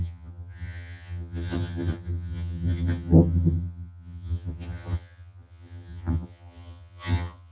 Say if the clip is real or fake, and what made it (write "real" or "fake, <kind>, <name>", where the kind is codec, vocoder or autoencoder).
fake, vocoder, HiFi-GAN